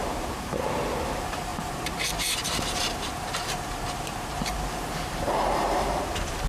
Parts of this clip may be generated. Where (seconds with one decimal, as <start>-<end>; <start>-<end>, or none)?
0.0-6.5